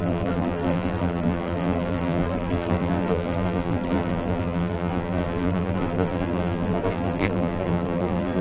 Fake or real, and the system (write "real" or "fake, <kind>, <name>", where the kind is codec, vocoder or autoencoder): fake, vocoder, BigVGAN v2